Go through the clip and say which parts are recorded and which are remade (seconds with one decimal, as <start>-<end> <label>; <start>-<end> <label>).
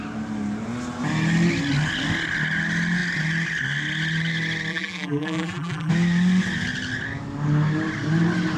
0.0-4.7 recorded; 4.7-5.9 remade; 5.9-8.6 recorded